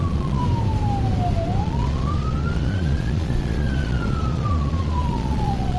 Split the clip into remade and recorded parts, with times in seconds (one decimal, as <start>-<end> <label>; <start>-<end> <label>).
0.0-0.4 remade; 0.4-1.6 recorded; 1.6-5.8 remade